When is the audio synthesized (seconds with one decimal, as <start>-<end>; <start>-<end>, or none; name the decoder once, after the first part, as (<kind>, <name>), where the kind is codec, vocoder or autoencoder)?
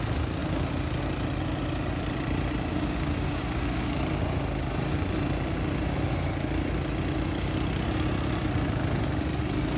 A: 2.7-4.0 (codec, DAC)